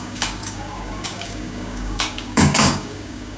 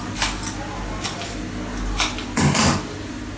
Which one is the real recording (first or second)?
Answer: second